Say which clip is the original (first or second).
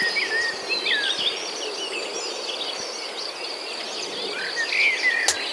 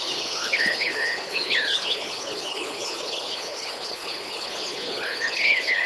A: first